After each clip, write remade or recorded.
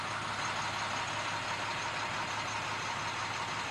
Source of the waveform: recorded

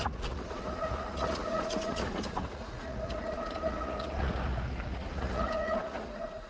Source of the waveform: remade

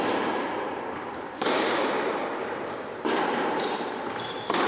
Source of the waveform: remade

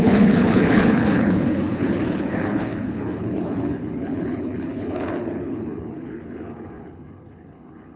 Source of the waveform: remade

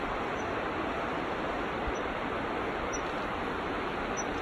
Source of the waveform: recorded